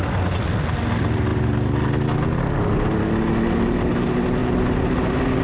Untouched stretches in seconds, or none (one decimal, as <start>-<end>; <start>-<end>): 0.0-5.4